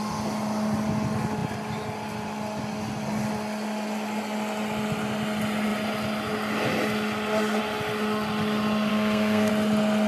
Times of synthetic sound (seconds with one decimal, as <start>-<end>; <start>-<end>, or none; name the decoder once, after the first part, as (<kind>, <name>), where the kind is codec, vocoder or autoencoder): 8.9-9.5 (codec, SNAC)